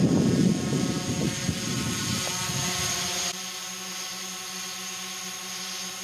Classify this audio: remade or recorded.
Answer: recorded